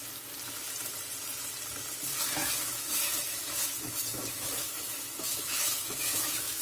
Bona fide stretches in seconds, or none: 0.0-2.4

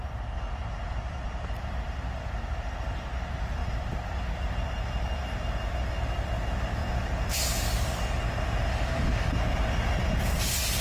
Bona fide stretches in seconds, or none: 0.0-8.7; 9.3-10.8

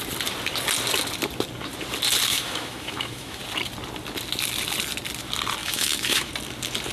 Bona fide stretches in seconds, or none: 0.0-2.3; 3.4-5.6; 6.3-6.9